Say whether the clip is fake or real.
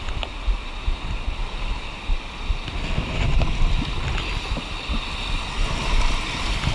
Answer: real